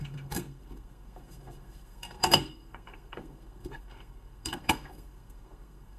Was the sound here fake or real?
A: fake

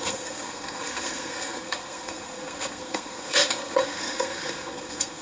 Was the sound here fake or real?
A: fake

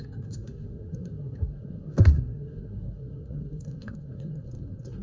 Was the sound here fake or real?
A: fake